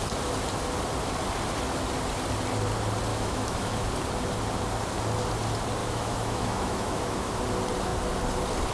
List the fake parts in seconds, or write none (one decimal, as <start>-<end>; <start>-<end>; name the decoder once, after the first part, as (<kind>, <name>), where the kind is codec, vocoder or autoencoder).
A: 3.1-3.9 (autoencoder, DAC-VAE); 5.8-7.4